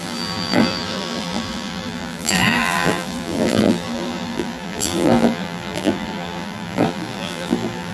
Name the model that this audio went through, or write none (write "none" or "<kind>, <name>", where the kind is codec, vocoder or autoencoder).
vocoder, BigVGAN v2